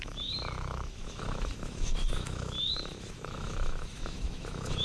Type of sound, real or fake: fake